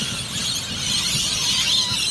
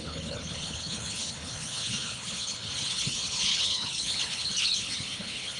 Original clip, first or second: first